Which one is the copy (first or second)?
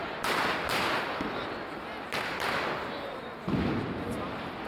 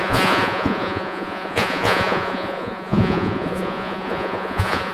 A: second